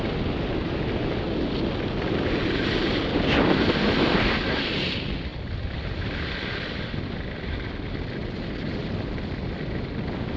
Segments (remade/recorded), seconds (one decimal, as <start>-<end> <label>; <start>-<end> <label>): 0.0-10.4 recorded